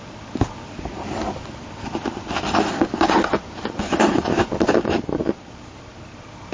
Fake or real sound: real